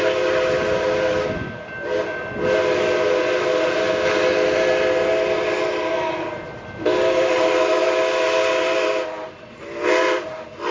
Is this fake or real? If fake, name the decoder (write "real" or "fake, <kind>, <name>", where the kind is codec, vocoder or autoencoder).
real